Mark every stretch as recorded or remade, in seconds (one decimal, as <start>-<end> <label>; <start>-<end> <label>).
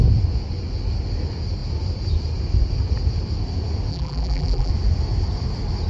0.0-3.9 recorded; 3.9-4.7 remade; 4.7-5.9 recorded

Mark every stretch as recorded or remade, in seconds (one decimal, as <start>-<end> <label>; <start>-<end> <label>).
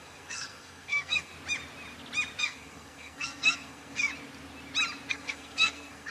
0.0-1.3 remade; 1.3-2.4 recorded; 2.4-4.1 remade; 4.1-5.1 recorded; 5.1-6.1 remade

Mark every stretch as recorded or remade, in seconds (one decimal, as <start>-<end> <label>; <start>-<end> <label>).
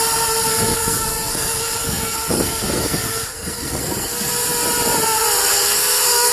0.0-0.5 recorded; 0.5-4.3 remade; 4.3-5.5 recorded; 5.5-6.3 remade